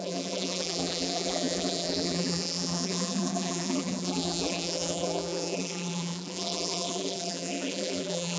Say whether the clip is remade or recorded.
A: remade